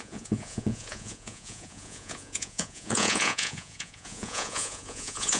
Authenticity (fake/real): fake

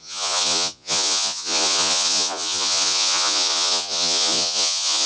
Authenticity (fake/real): fake